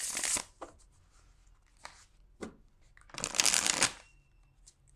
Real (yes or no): yes